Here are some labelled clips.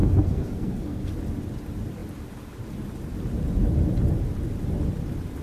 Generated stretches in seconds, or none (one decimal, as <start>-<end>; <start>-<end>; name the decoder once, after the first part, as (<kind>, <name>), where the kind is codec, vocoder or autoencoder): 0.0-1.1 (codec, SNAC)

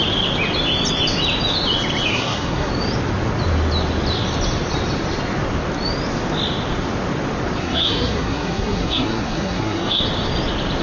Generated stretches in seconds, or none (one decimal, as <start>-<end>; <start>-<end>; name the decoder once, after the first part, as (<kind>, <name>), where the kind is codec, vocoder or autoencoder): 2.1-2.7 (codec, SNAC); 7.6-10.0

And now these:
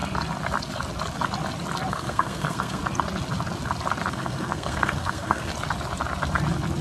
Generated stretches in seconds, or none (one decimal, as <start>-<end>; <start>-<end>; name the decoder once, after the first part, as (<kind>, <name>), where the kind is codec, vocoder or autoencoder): 1.9-2.8 (codec, SNAC); 4.1-5.5

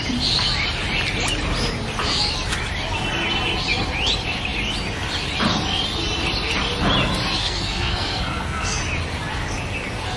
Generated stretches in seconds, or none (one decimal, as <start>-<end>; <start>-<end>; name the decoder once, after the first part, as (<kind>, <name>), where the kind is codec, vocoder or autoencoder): 7.4-8.8 (codec, SNAC)

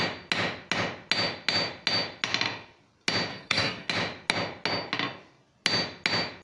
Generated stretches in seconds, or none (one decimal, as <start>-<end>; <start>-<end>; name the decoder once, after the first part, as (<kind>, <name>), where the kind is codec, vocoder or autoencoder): 3.3-3.9 (codec, SNAC)